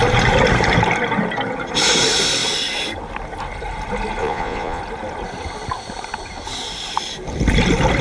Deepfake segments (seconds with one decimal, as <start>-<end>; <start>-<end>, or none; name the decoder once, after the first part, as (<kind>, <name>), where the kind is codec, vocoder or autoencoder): 4.2-4.8 (vocoder, Vocos)